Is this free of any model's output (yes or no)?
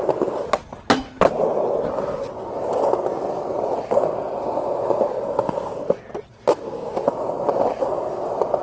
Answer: yes